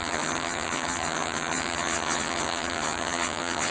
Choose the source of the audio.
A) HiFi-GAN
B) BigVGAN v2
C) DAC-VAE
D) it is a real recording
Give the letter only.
A